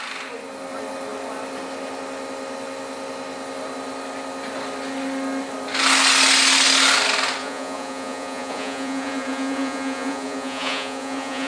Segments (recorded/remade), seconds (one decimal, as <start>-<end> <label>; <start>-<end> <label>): 0.0-7.4 recorded; 7.4-11.5 remade